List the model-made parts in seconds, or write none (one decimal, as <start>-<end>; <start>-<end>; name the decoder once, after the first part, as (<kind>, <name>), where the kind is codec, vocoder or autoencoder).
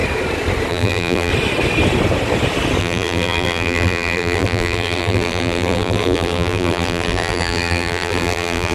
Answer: 0.7-1.3 (vocoder, BigVGAN v2); 2.8-8.7